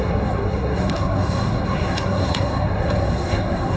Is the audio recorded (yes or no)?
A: no